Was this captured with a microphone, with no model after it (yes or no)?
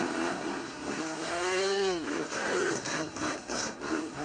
no